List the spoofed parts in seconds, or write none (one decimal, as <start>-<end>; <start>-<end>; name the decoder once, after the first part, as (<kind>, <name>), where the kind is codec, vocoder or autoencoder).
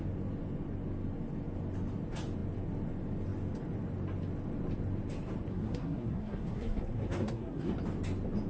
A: 5.5-7.7 (codec, SNAC)